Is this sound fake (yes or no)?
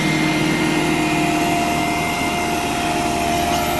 no